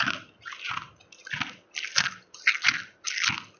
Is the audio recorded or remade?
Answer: recorded